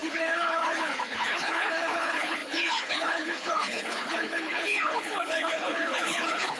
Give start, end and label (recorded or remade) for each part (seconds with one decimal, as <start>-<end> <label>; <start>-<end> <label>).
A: 0.0-6.6 remade